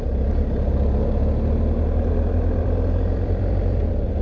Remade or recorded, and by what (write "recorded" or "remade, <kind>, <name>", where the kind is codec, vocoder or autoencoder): remade, vocoder, BigVGAN v2